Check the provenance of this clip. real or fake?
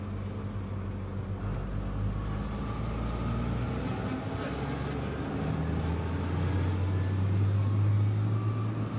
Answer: real